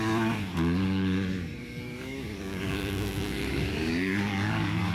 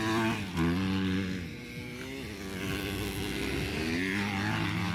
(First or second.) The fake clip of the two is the first